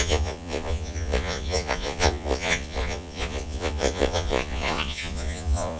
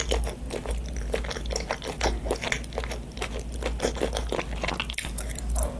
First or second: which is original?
second